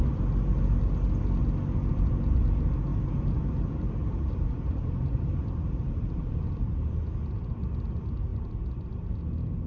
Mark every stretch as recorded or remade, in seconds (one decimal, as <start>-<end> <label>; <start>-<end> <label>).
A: 0.0-2.9 recorded; 2.9-7.0 remade; 7.0-9.7 recorded